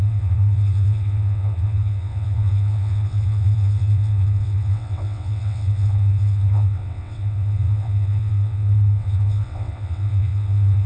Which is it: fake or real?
fake